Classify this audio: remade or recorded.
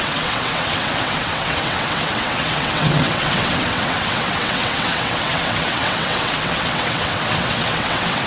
remade